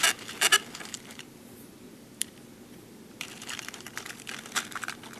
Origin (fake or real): fake